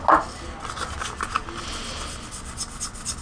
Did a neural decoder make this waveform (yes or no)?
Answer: no